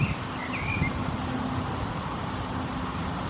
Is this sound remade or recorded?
recorded